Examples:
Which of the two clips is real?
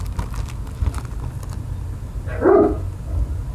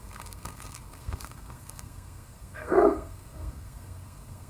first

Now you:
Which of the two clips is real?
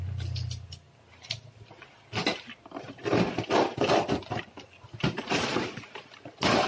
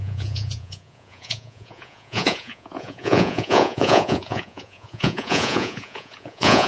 first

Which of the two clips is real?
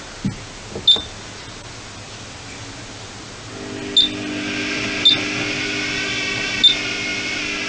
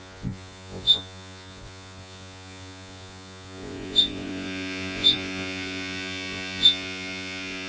first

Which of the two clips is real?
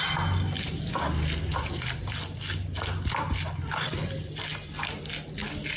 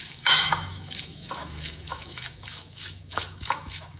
first